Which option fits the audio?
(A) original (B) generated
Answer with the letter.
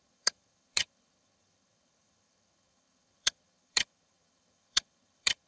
B